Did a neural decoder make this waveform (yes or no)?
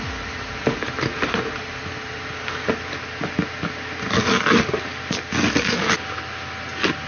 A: no